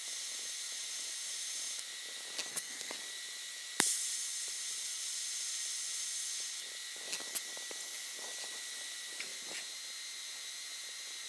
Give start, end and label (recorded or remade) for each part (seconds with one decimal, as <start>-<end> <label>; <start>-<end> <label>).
0.0-2.5 recorded; 2.5-3.0 remade; 3.0-11.3 recorded